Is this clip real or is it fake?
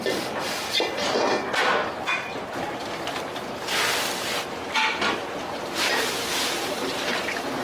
fake